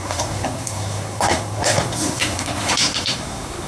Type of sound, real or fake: fake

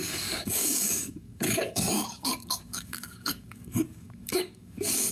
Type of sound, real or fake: fake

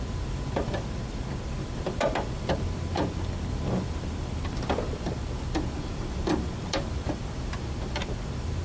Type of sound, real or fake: fake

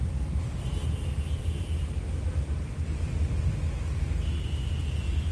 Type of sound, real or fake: real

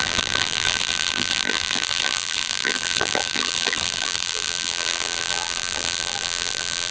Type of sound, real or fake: fake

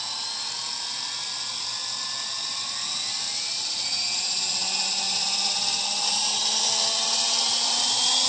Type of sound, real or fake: real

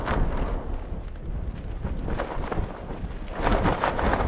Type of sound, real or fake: real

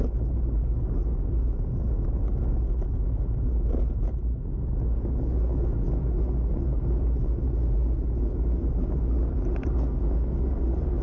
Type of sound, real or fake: real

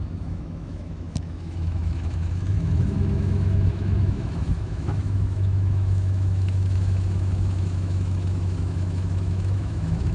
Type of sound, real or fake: fake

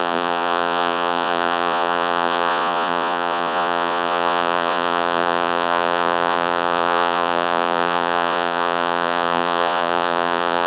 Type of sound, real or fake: fake